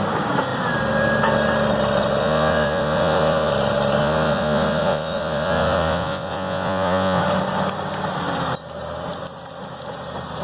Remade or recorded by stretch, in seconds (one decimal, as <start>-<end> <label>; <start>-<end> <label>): 0.0-2.2 recorded; 2.2-3.5 remade; 3.5-4.0 recorded; 4.0-7.2 remade; 7.2-10.4 recorded

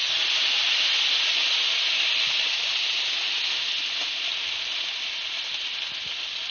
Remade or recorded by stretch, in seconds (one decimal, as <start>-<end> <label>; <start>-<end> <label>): 0.0-6.5 recorded